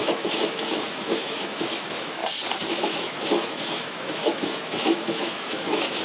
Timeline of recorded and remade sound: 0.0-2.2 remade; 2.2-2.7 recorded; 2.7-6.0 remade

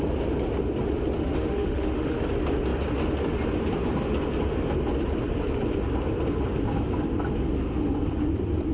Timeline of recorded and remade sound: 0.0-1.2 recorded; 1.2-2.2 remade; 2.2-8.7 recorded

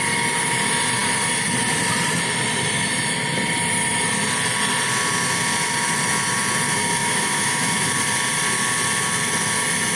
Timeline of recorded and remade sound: 0.0-7.0 recorded; 7.0-7.9 remade; 7.9-10.0 recorded

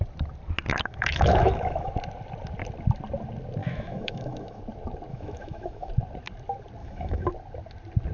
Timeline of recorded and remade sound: 0.0-0.7 recorded; 0.7-1.9 remade; 1.9-3.6 recorded; 3.6-4.6 remade; 4.6-5.1 recorded; 5.1-5.9 remade; 5.9-6.8 recorded; 6.8-7.3 remade; 7.3-8.1 recorded